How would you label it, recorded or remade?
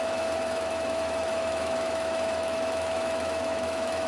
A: remade